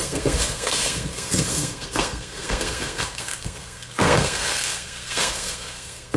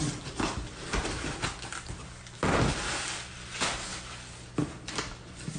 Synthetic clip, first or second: first